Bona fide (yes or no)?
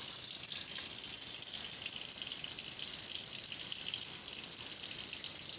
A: yes